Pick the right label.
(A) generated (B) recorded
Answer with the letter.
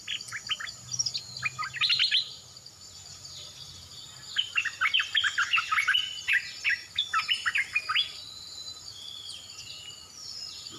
B